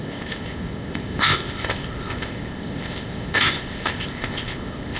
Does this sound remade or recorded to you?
remade